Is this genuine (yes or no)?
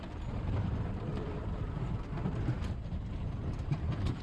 no